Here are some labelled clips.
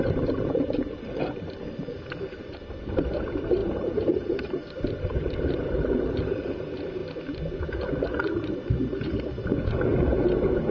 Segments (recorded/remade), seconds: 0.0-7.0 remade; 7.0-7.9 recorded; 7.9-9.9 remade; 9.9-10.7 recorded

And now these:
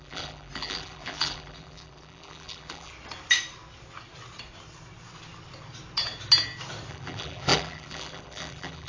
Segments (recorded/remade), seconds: 0.0-2.9 remade; 2.9-6.9 recorded; 6.9-8.9 remade

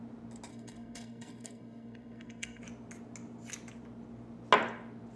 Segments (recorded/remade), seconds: 0.0-0.5 recorded; 0.5-2.6 remade; 2.6-5.2 recorded

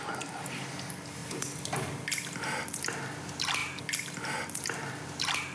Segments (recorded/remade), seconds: 0.0-5.5 recorded

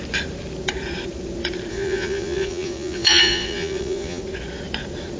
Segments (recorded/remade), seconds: 0.0-1.7 recorded; 1.7-4.2 remade; 4.2-5.2 recorded